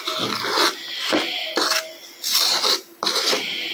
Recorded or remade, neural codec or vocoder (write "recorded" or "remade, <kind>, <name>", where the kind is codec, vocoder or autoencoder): recorded